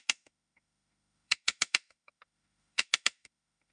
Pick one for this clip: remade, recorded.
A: remade